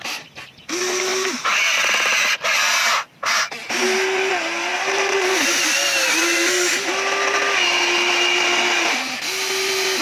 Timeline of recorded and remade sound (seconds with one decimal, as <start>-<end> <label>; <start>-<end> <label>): 0.0-10.0 recorded